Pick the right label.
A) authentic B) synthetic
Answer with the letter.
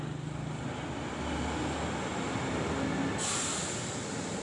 A